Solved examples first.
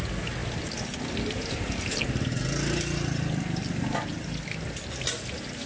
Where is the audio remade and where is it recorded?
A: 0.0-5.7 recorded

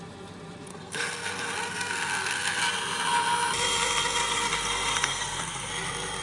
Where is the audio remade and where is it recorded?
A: 0.0-0.7 recorded; 0.7-2.6 remade; 2.6-4.2 recorded; 4.2-5.7 remade; 5.7-6.2 recorded

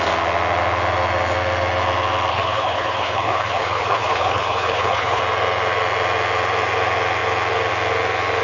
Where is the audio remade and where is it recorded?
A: 0.0-2.3 recorded; 2.3-5.2 remade; 5.2-8.4 recorded

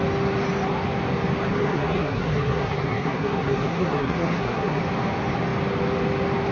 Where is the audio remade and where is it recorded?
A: 0.0-1.5 recorded; 1.5-4.8 remade; 4.8-6.5 recorded

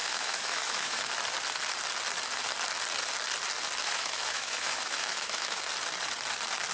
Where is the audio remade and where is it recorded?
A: 0.0-1.1 remade; 1.1-3.8 recorded; 3.8-5.6 remade; 5.6-6.7 recorded

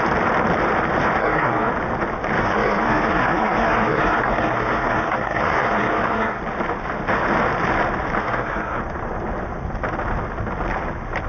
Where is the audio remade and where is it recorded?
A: 0.0-1.2 recorded; 1.2-1.7 remade; 1.7-2.4 recorded; 2.4-6.4 remade; 6.4-8.2 recorded; 8.2-8.8 remade; 8.8-11.3 recorded

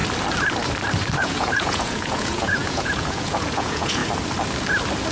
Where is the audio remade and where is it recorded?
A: 0.0-1.2 recorded; 1.2-4.0 remade; 4.0-5.1 recorded

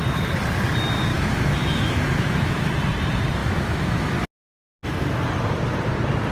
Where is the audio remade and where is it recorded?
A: 0.0-1.1 recorded; 1.1-2.7 remade; 2.7-3.4 recorded; 3.4-4.1 remade; 4.1-6.3 recorded